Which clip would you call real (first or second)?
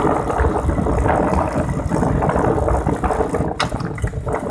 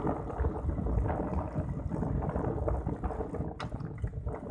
second